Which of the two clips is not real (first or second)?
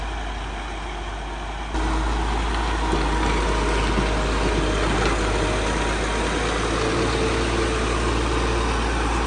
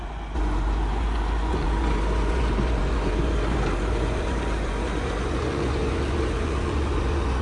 second